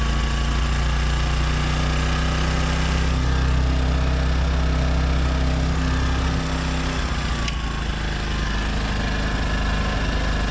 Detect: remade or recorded recorded